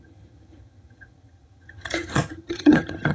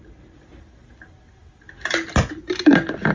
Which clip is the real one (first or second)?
second